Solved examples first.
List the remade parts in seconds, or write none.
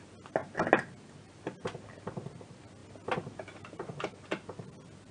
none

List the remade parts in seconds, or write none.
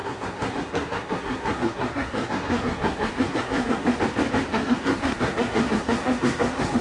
0.0-4.0 (codec, SNAC); 4.5-6.8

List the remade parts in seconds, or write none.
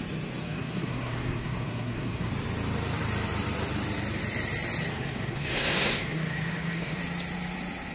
0.4-2.3 (codec, SNAC); 4.9-7.0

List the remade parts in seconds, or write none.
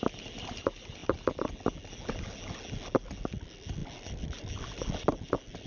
none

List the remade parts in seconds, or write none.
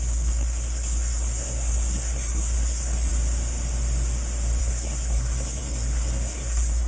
0.0-3.1 (codec, SNAC); 4.6-6.9